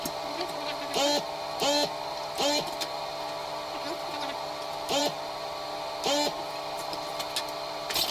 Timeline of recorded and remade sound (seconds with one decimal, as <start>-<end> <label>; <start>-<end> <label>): 0.0-8.1 recorded